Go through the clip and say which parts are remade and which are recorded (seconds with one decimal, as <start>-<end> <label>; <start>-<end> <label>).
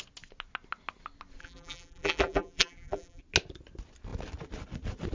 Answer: 0.0-1.4 recorded; 1.4-3.2 remade; 3.2-5.1 recorded